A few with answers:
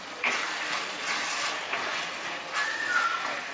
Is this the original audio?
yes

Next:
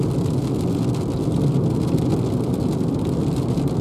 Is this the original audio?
yes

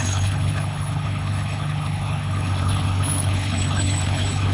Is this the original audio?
no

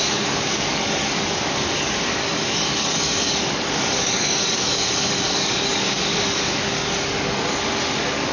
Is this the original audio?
no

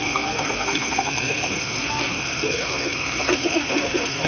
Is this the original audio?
no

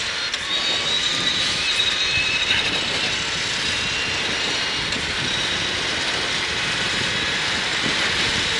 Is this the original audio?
yes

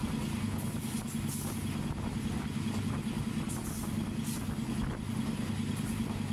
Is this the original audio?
yes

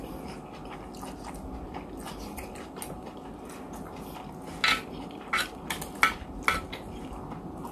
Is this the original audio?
yes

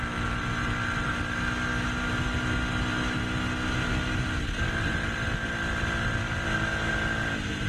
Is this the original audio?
yes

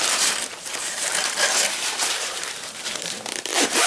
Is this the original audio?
no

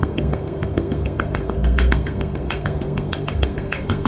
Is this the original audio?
no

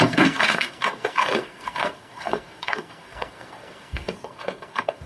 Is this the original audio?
no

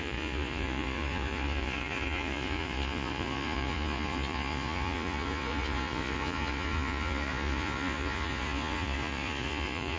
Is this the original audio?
no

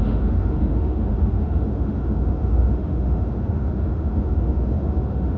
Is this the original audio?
no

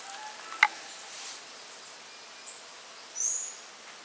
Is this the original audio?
yes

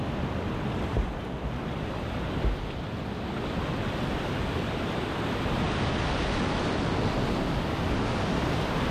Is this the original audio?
yes